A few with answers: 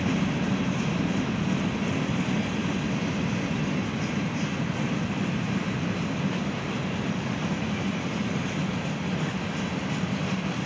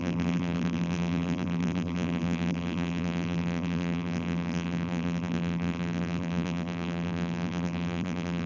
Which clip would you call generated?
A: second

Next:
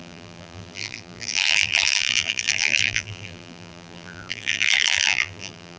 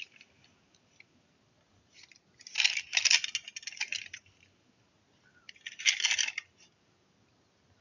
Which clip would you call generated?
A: first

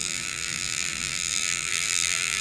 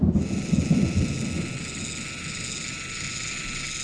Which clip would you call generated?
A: first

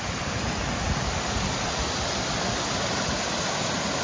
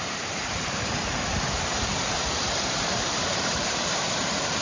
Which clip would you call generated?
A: second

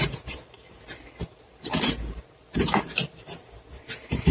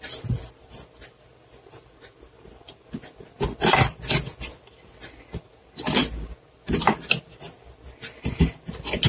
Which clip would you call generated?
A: first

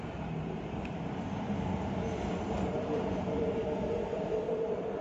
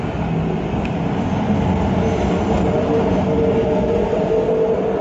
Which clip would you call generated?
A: first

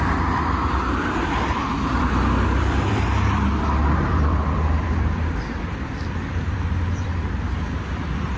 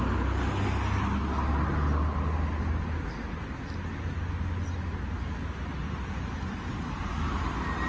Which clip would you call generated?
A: first